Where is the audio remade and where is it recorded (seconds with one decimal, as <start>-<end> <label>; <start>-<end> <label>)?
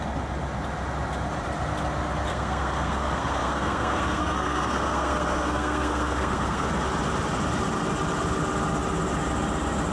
0.0-2.3 recorded; 2.3-6.7 remade; 6.7-9.9 recorded